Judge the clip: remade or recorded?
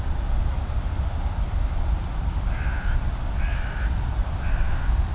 recorded